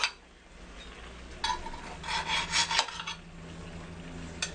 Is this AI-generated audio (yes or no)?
no